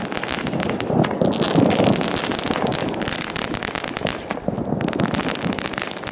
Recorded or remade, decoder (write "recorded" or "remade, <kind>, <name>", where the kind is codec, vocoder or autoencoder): recorded